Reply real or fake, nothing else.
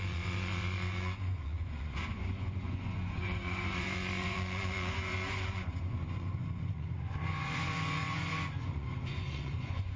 fake